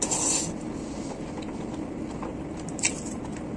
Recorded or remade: recorded